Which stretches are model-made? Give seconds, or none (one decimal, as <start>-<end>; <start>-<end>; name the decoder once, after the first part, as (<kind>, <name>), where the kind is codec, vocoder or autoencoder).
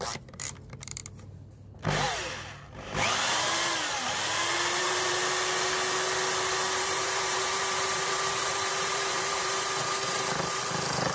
0.0-1.0 (vocoder, BigVGAN v2); 4.8-5.2; 6.8-11.1